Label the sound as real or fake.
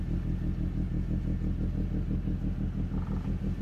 real